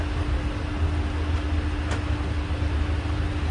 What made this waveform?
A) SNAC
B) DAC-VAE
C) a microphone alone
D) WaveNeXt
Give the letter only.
C